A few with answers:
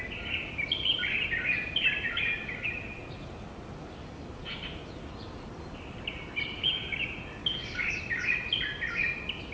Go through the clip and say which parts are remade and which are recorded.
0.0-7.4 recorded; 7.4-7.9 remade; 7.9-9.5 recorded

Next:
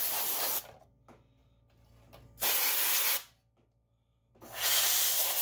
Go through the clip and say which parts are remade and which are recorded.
0.0-5.4 recorded

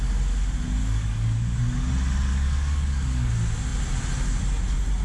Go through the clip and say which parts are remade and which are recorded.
0.0-0.8 recorded; 0.8-1.9 remade; 1.9-2.3 recorded; 2.3-3.3 remade; 3.3-5.0 recorded